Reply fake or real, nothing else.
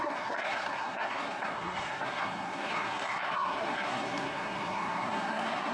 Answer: fake